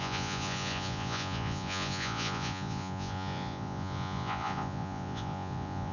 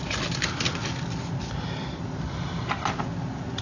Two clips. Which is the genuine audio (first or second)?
second